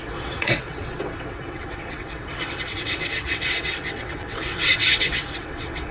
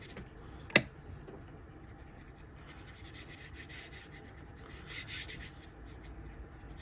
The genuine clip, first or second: second